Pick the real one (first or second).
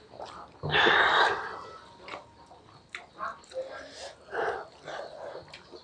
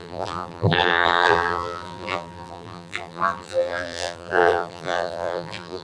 first